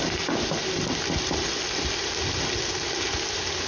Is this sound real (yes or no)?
yes